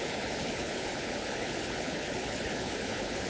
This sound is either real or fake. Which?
fake